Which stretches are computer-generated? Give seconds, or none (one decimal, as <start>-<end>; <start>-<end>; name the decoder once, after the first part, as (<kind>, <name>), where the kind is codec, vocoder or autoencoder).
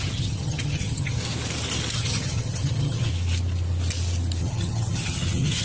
0.0-1.2 (vocoder, HiFi-GAN); 1.9-3.1; 4.4-5.6